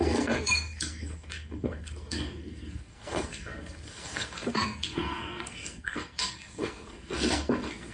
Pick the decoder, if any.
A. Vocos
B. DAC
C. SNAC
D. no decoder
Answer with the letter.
C